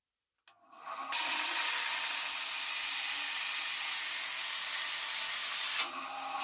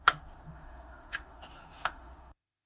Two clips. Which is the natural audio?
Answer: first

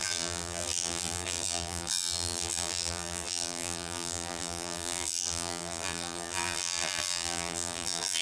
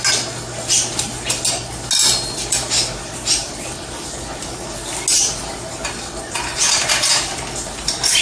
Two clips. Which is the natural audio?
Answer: second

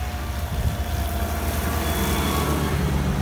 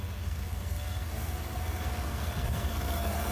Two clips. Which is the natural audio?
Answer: first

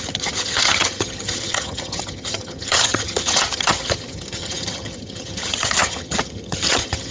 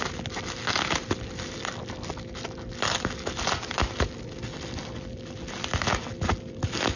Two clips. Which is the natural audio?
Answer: second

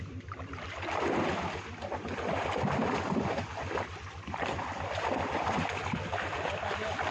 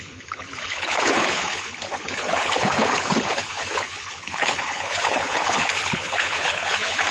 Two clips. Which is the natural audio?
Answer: first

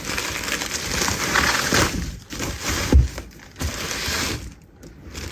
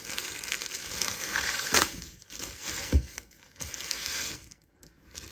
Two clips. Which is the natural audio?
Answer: first